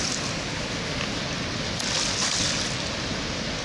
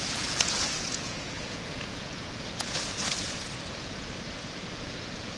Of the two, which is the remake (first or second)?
second